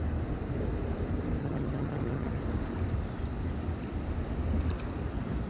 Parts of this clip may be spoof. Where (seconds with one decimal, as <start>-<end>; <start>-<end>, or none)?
1.4-2.4